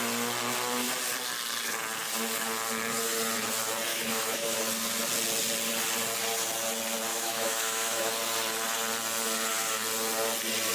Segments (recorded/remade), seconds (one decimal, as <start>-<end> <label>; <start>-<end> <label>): 0.0-3.9 recorded; 3.9-4.6 remade; 4.6-7.1 recorded; 7.1-8.1 remade; 8.1-10.7 recorded